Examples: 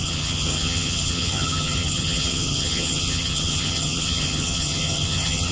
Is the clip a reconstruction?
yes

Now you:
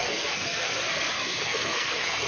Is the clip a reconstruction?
yes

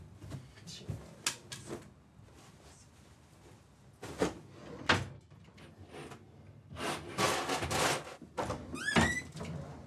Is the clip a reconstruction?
no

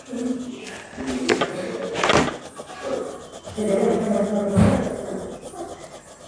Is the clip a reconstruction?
no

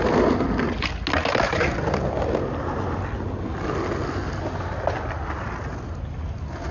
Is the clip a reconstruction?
no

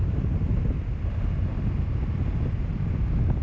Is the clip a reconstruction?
no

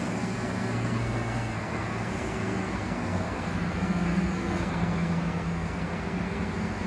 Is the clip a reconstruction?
yes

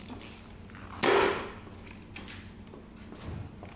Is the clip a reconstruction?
no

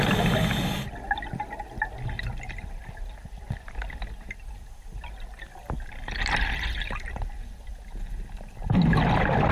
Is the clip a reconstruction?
no